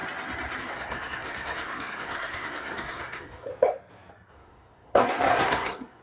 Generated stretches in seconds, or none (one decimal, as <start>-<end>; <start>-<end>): 0.6-3.5; 4.3-6.0

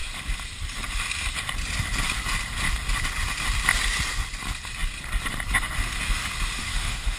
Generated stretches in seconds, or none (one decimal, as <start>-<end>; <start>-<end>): 6.6-7.2